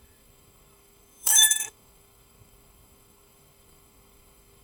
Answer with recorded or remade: remade